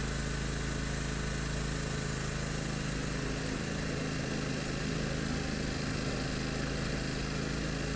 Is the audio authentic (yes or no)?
yes